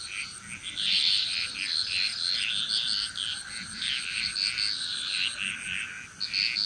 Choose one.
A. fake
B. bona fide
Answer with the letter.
B